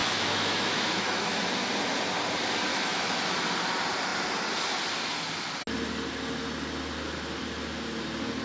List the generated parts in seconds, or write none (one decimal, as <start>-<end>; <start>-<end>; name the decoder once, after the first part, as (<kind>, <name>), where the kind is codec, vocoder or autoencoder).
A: 0.0-1.4 (autoencoder, DAC-VAE); 2.7-3.2